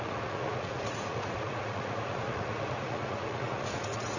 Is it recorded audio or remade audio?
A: remade